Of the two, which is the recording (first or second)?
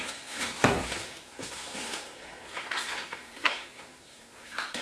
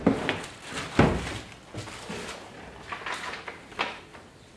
second